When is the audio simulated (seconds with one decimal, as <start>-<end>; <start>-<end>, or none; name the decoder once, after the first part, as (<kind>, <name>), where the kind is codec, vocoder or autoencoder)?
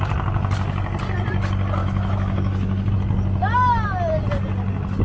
1.8-2.9 (autoencoder, DAC-VAE)